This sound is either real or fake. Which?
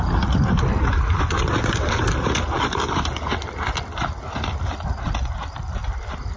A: real